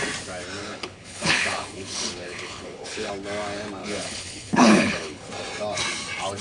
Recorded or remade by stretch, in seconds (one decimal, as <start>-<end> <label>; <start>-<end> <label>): 0.0-0.6 recorded; 0.6-3.1 remade; 3.1-3.8 recorded; 3.8-5.3 remade; 5.3-6.4 recorded